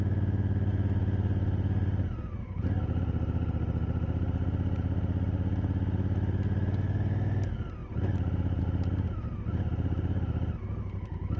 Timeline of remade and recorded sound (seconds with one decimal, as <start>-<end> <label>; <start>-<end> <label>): 0.0-11.4 recorded